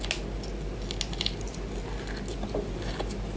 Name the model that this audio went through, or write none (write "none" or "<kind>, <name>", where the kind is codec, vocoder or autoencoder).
none